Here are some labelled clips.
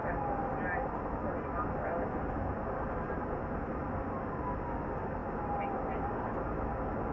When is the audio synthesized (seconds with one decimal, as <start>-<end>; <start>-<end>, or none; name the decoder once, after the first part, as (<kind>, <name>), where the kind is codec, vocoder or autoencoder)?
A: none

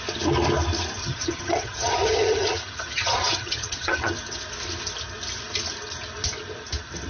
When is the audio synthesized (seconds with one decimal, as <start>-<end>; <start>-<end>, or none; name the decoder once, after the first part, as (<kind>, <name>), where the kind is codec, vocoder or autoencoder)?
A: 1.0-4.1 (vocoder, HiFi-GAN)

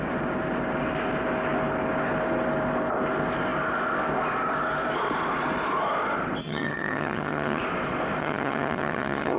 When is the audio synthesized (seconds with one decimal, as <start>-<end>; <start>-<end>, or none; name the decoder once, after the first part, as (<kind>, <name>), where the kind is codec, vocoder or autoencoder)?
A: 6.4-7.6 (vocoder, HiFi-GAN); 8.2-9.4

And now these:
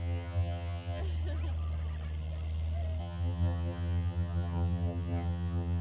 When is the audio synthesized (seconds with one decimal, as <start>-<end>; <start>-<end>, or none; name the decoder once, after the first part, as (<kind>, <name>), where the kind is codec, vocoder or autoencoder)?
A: 0.0-1.0 (vocoder, HiFi-GAN); 3.0-5.8